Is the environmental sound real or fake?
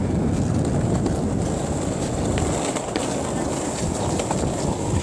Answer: real